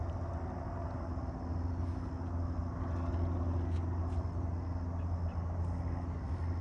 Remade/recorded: recorded